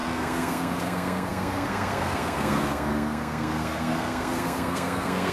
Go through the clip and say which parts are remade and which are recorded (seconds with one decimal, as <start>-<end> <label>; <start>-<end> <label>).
0.0-5.3 remade